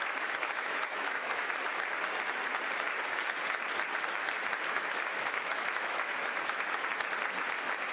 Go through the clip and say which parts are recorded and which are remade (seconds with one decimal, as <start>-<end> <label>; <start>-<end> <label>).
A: 0.0-1.4 remade; 1.4-4.7 recorded; 4.7-6.8 remade; 6.8-7.9 recorded